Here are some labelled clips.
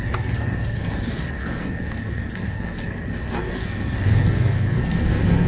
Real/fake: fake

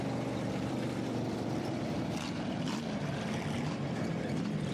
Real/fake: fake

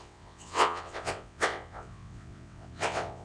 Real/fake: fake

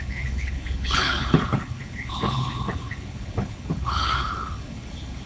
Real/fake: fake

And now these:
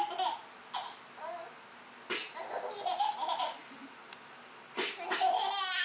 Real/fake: real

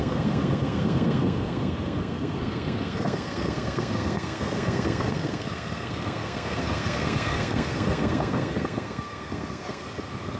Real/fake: fake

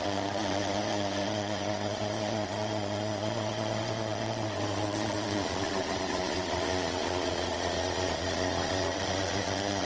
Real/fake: fake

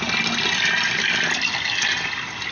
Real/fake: real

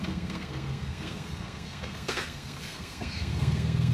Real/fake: fake